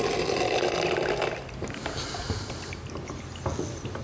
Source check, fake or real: real